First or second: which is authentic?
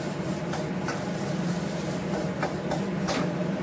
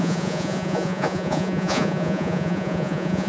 first